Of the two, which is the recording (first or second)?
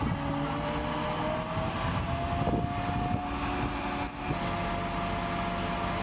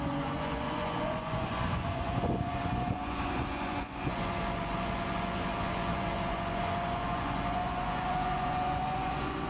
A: first